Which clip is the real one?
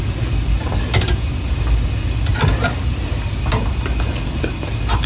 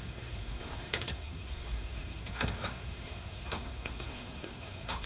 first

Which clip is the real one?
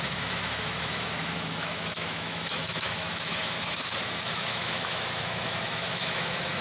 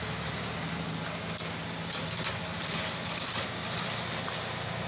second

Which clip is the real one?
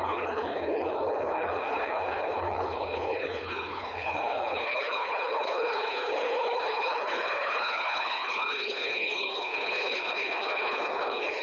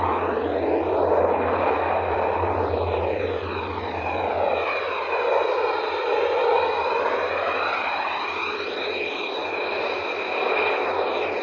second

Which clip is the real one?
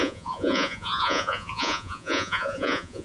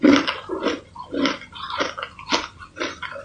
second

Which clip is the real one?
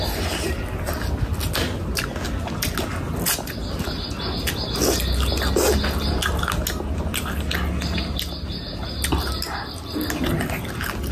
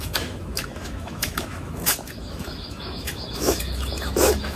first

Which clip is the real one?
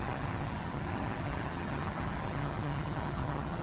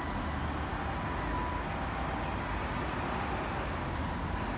second